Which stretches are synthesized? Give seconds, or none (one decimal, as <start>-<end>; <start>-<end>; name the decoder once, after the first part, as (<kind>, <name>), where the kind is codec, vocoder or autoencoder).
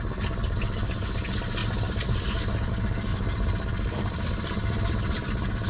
1.6-2.7 (vocoder, BigVGAN v2); 3.1-5.7